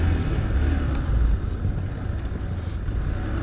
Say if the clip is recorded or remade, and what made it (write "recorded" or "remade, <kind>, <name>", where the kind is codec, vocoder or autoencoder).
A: recorded